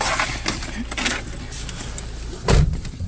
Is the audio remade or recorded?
recorded